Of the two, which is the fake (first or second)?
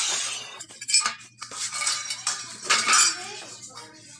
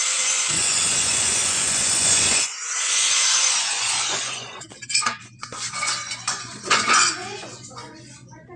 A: second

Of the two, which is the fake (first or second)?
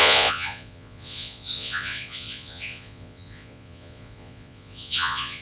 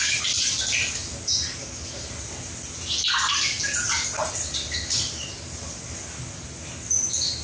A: first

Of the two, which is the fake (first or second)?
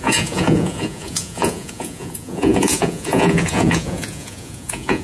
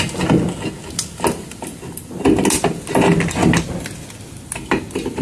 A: first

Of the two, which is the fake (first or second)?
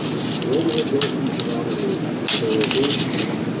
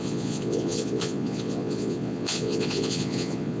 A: second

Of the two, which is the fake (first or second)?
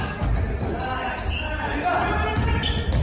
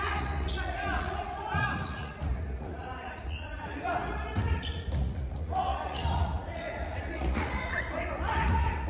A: second